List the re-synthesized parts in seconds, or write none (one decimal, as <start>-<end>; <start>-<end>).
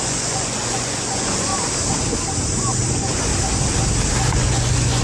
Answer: 0.0-1.5; 2.9-3.3; 4.3-5.0